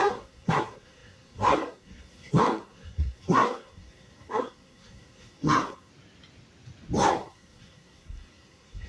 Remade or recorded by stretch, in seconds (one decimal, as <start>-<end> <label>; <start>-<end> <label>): 0.0-5.9 remade; 5.9-7.1 recorded; 7.1-8.9 remade